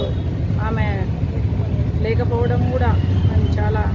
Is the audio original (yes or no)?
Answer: yes